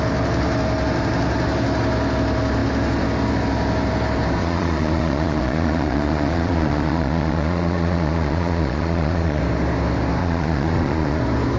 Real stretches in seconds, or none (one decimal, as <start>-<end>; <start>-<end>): 0.0-4.4; 9.4-10.2; 11.2-11.6